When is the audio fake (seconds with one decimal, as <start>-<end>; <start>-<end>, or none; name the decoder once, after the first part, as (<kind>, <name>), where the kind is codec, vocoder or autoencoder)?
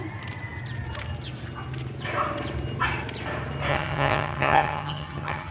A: 3.7-5.5 (vocoder, HiFi-GAN)